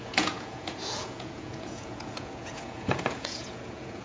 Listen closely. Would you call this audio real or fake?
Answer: fake